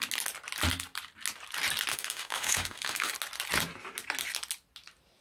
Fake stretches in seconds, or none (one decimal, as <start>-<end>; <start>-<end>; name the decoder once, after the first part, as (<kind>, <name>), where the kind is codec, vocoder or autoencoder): 1.9-3.1 (autoencoder, DAC-VAE)

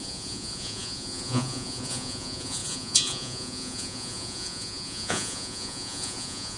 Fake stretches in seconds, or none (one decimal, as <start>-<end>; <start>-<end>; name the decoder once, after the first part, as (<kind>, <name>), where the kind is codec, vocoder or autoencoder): 0.0-6.6 (vocoder, Vocos)

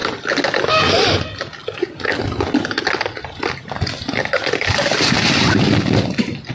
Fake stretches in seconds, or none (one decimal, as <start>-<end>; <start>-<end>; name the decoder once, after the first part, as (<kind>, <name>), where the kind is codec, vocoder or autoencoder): none

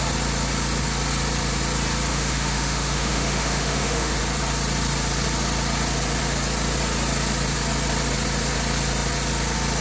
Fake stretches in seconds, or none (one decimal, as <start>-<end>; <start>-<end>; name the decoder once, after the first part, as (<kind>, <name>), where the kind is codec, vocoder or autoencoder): 2.1-4.2 (autoencoder, DAC-VAE)